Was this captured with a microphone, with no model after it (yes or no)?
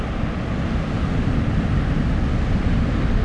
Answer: yes